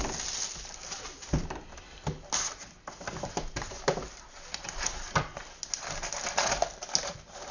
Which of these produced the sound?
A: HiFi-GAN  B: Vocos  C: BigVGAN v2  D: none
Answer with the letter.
D